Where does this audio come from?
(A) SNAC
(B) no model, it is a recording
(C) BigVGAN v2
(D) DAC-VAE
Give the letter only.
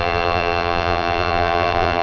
C